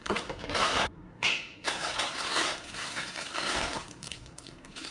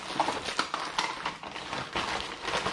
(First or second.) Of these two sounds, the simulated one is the first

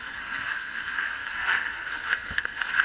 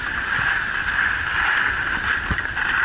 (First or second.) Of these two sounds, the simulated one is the first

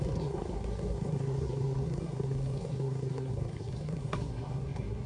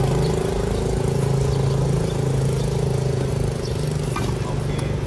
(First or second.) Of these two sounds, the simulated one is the first